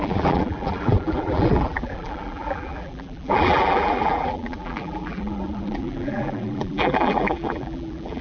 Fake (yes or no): yes